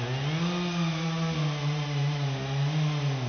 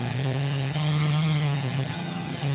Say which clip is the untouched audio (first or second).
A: first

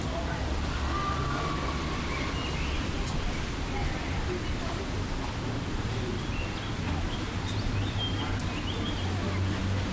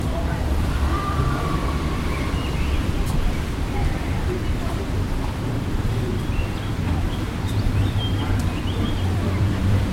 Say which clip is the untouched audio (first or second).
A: first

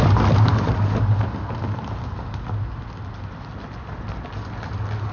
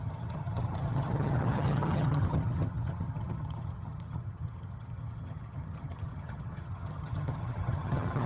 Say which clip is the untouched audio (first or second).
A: first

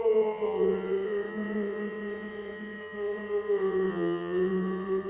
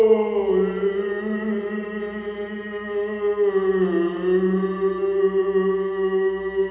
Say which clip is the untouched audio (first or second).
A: second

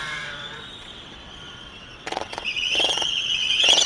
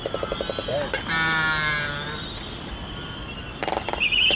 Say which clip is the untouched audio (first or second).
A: second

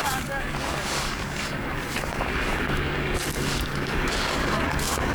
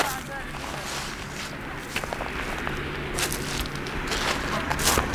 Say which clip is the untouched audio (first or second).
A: second